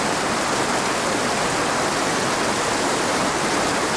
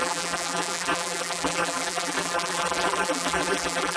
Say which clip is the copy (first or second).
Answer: second